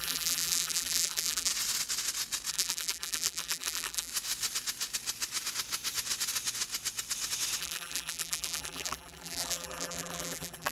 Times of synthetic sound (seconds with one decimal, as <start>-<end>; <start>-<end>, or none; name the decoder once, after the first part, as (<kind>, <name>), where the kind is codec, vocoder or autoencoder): 0.0-1.5 (vocoder, BigVGAN v2); 2.5-4.1; 7.6-10.7